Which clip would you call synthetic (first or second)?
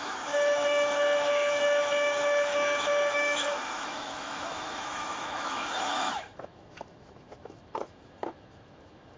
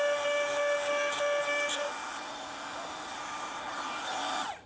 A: first